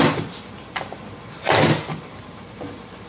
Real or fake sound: real